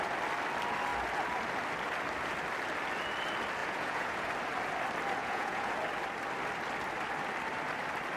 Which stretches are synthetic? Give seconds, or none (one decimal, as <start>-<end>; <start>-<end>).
3.6-4.3; 5.2-5.7